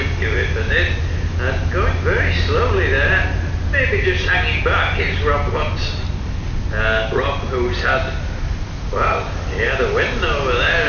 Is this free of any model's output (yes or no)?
yes